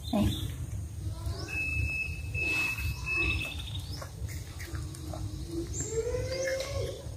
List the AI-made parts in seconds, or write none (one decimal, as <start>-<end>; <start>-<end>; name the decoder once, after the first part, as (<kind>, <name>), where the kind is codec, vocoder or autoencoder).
1.7-3.4 (vocoder, BigVGAN v2); 6.5-7.2

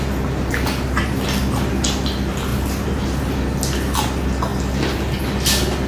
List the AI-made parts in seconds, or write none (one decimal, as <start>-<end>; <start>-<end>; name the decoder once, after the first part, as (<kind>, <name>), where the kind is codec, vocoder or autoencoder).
2.5-3.0 (vocoder, BigVGAN v2)

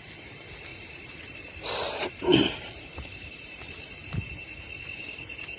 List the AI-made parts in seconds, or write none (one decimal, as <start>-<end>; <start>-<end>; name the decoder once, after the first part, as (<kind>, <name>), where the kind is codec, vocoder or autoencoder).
0.7-4.1 (vocoder, BigVGAN v2)

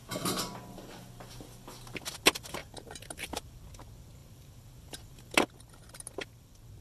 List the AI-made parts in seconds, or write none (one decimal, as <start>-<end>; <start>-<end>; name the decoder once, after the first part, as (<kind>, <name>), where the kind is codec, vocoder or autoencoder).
0.0-1.1 (vocoder, BigVGAN v2); 2.6-3.3; 4.2-5.3

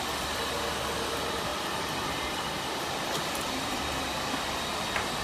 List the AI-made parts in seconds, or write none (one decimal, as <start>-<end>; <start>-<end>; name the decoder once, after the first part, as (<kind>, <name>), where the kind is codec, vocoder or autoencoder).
1.5-4.6 (vocoder, BigVGAN v2)

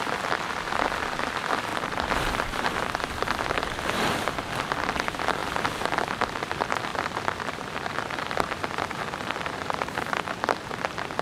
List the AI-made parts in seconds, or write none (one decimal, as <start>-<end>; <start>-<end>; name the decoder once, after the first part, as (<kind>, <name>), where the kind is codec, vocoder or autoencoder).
1.7-2.8 (vocoder, BigVGAN v2); 6.9-10.3

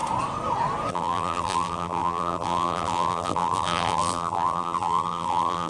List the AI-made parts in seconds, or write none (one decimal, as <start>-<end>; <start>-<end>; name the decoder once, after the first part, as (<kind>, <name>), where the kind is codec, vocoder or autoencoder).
0.9-5.7 (vocoder, BigVGAN v2)

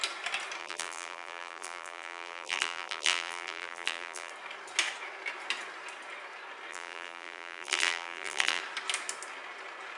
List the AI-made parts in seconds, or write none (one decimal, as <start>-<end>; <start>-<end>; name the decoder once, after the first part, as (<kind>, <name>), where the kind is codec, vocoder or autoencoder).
0.6-4.3 (vocoder, BigVGAN v2); 6.7-8.6